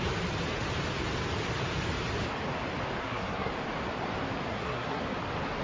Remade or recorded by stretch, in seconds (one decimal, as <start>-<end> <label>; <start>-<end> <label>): 0.0-3.0 recorded; 3.0-3.5 remade; 3.5-4.5 recorded; 4.5-5.0 remade; 5.0-5.6 recorded